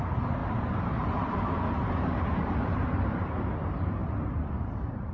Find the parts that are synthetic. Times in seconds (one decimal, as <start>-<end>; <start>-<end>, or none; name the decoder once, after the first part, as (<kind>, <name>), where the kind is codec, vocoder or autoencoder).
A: 0.0-5.1 (vocoder, BigVGAN v2)